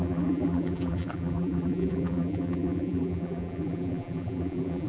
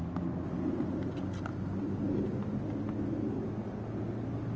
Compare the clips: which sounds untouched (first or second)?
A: second